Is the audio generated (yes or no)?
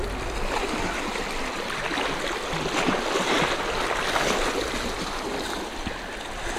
no